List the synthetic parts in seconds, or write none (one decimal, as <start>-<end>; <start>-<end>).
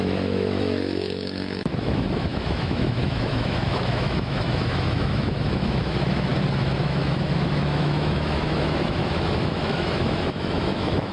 0.0-6.3; 6.8-11.1